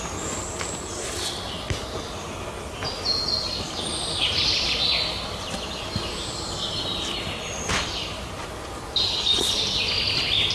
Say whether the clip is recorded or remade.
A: recorded